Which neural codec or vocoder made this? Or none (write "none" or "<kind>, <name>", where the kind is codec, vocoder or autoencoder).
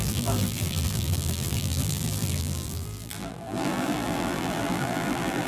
vocoder, BigVGAN v2